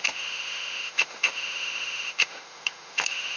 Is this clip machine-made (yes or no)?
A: yes